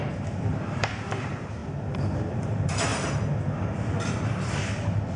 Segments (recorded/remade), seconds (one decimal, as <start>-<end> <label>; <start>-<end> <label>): 0.0-1.6 remade; 1.6-2.3 recorded; 2.3-2.9 remade; 2.9-5.2 recorded